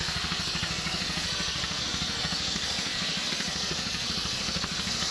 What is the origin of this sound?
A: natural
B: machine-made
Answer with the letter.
B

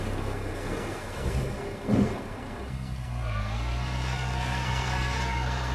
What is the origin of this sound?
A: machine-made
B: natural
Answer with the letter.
A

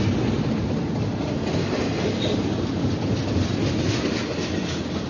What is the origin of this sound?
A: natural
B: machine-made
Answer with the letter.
A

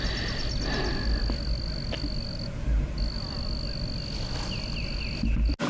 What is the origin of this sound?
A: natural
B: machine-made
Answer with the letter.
A